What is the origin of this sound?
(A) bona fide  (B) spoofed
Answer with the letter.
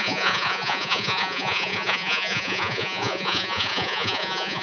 B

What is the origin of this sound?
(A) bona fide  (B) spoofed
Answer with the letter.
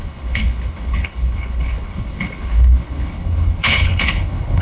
B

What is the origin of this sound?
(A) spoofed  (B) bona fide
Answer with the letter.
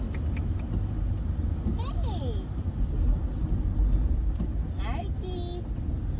B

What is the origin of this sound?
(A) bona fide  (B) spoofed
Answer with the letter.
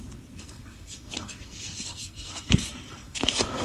B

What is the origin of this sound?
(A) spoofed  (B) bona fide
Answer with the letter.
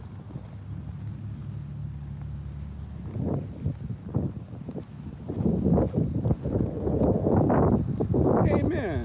B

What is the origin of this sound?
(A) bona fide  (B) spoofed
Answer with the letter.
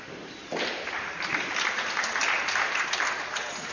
B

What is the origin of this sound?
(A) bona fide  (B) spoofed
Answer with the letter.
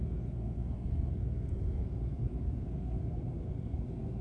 B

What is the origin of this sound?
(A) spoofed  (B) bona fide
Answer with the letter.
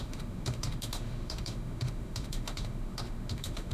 A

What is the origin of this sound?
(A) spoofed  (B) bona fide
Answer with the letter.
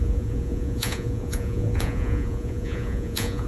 A